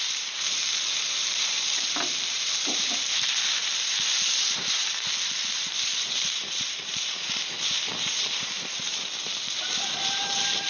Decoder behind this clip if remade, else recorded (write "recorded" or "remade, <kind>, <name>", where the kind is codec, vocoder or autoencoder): remade, vocoder, BigVGAN v2